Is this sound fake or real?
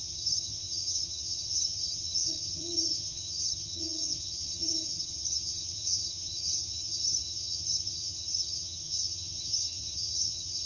fake